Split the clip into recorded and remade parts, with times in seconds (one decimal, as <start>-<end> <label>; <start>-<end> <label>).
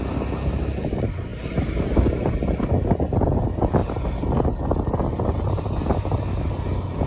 0.0-7.1 recorded